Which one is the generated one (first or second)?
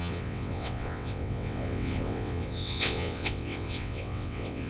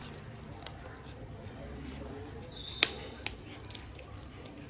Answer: first